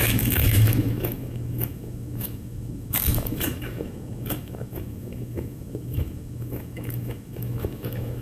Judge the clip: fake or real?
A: fake